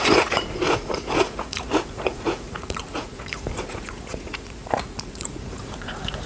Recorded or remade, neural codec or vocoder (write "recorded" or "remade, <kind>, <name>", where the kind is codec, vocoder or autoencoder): remade, vocoder, Vocos